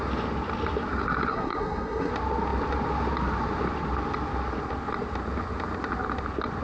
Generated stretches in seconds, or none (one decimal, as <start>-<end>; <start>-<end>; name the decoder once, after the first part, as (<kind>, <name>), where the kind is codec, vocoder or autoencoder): 1.3-2.1 (codec, SNAC)